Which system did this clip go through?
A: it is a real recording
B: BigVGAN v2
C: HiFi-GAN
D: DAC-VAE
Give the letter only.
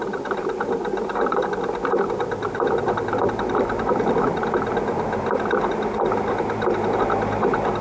A